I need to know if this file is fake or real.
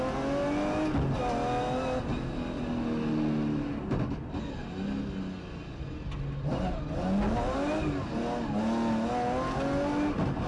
real